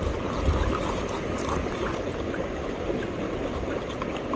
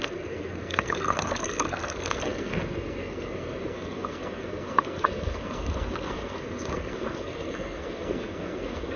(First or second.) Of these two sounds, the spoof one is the second